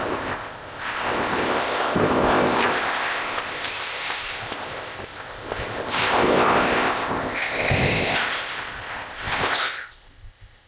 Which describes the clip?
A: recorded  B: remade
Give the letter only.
B